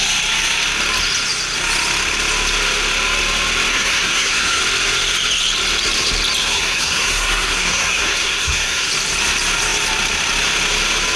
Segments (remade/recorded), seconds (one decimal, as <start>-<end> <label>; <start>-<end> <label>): 0.0-3.7 recorded; 3.7-4.6 remade; 4.6-6.4 recorded; 6.4-8.9 remade; 8.9-11.2 recorded

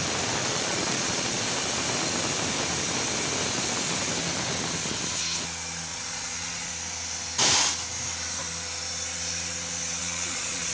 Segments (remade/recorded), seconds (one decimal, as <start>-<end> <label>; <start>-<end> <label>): 0.0-0.4 recorded; 0.4-1.4 remade; 1.4-5.9 recorded; 5.9-6.7 remade; 6.7-10.0 recorded; 10.0-10.7 remade

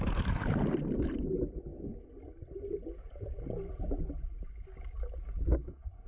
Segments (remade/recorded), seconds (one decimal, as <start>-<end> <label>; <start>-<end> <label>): 0.0-6.1 recorded

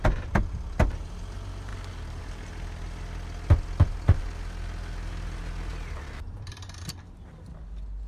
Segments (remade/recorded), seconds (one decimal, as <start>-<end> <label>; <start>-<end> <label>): 0.0-5.7 recorded; 5.7-6.9 remade; 6.9-8.1 recorded

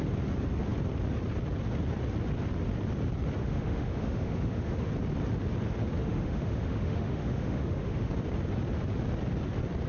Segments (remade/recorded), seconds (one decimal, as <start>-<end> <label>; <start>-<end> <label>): 0.0-3.4 recorded; 3.4-4.9 remade; 4.9-6.0 recorded; 6.0-8.1 remade; 8.1-9.9 recorded

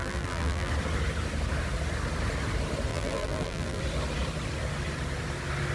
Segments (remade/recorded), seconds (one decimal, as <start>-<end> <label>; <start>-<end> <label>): 0.0-0.7 remade; 0.7-2.9 recorded; 2.9-3.8 remade; 3.8-5.7 recorded

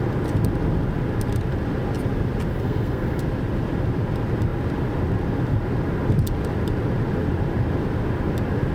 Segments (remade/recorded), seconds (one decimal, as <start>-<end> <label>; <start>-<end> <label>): 0.0-2.5 recorded; 2.5-3.2 remade; 3.2-8.7 recorded

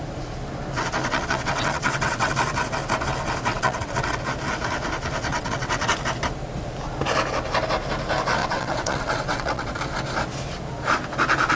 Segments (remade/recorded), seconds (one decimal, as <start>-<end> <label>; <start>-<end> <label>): 0.0-1.0 recorded; 1.0-2.3 remade; 2.3-3.5 recorded; 3.5-4.2 remade; 4.2-5.3 recorded; 5.3-5.9 remade; 5.9-8.4 recorded; 8.4-9.7 remade; 9.7-11.6 recorded